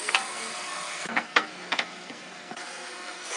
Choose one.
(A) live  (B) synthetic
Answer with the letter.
B